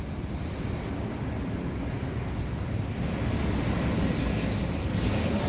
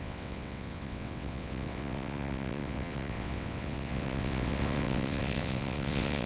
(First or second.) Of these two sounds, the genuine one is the first